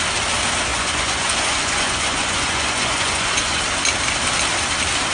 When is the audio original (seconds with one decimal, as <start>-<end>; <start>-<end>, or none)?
0.0-0.7; 3.6-5.1